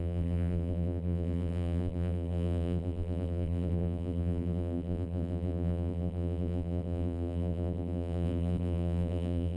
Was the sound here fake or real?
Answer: fake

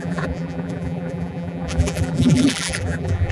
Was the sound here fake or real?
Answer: fake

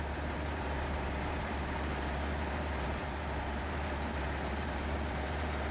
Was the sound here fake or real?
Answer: fake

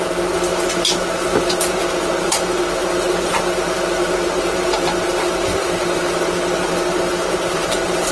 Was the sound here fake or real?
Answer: fake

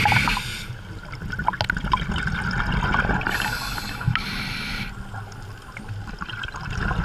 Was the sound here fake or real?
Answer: real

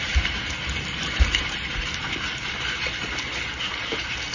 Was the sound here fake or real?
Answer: fake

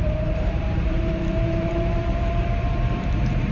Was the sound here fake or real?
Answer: fake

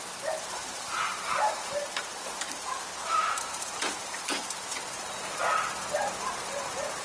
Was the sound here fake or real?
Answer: fake